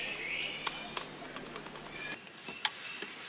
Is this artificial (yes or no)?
no